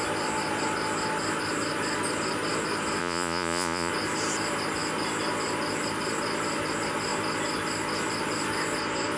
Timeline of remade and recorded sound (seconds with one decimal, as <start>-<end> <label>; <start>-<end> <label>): 0.0-3.0 recorded; 3.0-3.9 remade; 3.9-9.2 recorded